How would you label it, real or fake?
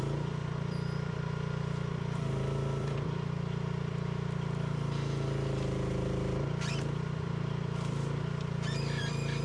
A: fake